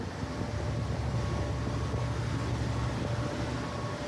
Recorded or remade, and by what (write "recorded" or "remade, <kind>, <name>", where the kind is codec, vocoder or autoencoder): recorded